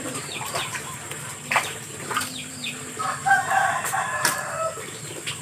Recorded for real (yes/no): no